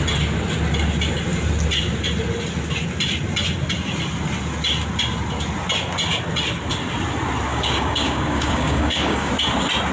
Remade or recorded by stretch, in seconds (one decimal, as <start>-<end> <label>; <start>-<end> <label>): 0.0-7.5 recorded; 7.5-9.3 remade; 9.3-9.9 recorded